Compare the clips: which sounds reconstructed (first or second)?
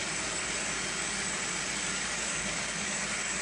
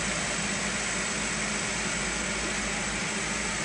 first